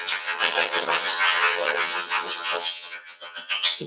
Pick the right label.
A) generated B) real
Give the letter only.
A